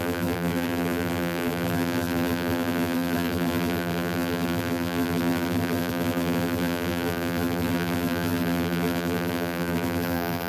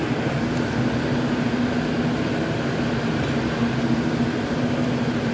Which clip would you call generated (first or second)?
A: first